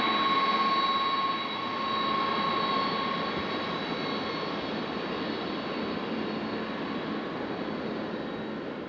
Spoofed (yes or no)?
no